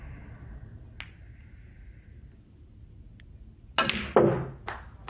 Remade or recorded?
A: recorded